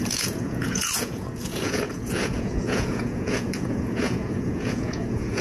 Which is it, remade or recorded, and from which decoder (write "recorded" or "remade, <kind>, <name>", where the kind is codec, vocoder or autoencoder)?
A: remade, vocoder, Vocos